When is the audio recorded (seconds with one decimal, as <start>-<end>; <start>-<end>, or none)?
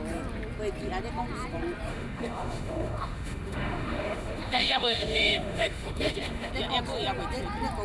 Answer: 0.0-1.9; 6.5-7.8